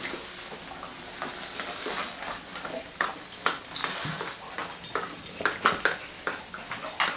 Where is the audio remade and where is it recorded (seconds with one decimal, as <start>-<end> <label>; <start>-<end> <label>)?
0.0-7.2 recorded